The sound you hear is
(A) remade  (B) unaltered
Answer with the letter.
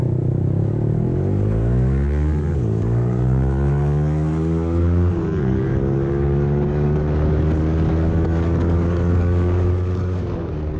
A